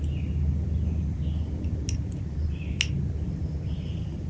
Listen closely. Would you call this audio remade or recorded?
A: recorded